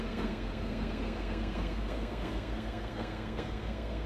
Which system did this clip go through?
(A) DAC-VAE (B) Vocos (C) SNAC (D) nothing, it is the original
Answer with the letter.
C